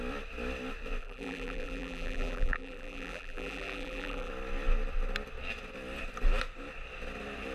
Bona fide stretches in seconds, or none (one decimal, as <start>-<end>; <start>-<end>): 0.0-1.0; 4.3-7.5